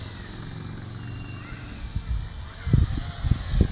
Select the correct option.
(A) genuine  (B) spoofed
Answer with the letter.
A